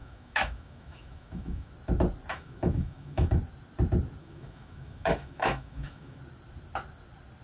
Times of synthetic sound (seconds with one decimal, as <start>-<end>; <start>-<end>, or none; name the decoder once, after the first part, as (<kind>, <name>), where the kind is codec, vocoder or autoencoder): 0.0-1.7 (autoencoder, DAC-VAE); 2.3-3.4; 4.2-6.2